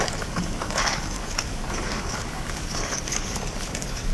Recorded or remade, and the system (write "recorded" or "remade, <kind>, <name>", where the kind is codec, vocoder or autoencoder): remade, codec, DAC